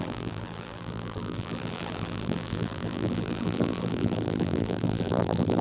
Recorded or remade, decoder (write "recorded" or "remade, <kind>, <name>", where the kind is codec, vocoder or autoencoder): remade, vocoder, BigVGAN v2